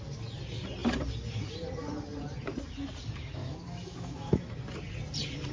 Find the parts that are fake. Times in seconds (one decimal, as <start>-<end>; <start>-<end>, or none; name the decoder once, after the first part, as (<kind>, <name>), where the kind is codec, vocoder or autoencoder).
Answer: 3.4-4.6 (autoencoder, DAC-VAE)